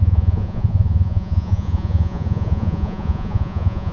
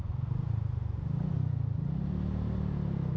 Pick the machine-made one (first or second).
first